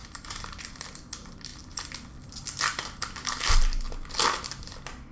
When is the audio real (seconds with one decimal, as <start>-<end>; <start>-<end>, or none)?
0.0-5.1